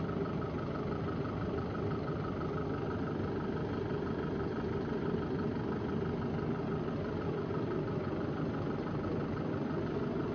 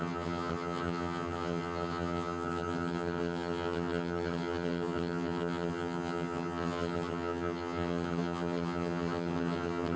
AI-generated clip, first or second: second